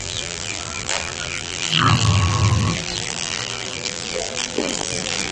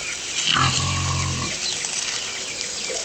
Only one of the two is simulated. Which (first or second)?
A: first